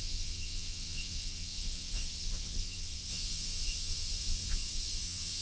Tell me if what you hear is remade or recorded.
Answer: remade